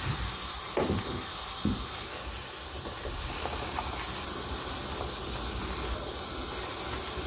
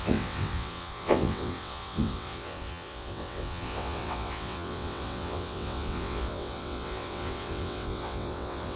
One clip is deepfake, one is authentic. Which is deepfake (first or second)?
second